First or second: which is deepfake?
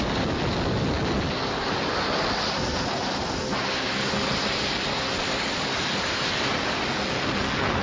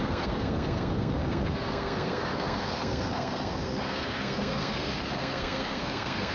second